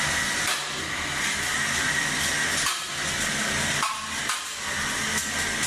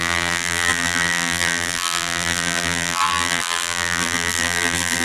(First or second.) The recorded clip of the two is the first